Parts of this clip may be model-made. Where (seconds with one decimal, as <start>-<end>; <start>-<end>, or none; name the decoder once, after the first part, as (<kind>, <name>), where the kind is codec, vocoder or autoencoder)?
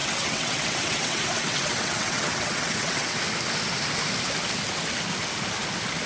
0.0-3.2 (vocoder, WaveNeXt)